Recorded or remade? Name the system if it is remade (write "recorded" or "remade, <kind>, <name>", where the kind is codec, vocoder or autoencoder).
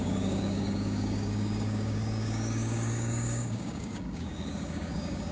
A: remade, codec, DAC